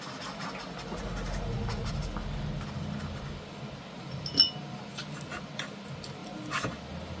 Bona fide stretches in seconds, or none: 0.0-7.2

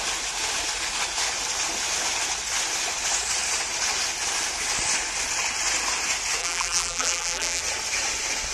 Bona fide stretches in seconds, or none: 0.0-6.4; 7.6-8.5

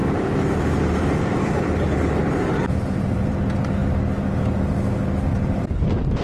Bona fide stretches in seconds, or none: 3.3-5.3; 5.8-6.2

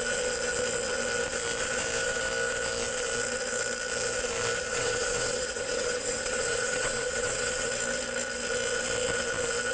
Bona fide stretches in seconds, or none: 0.0-4.7; 7.7-9.7

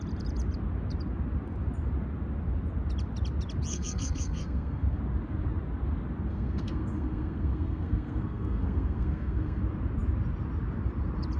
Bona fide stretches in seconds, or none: 0.0-3.7; 5.0-6.3; 9.6-11.4

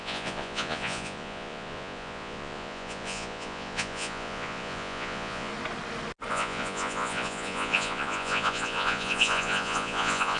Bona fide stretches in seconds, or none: 5.5-6.3